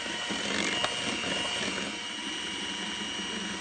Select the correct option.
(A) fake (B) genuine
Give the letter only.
B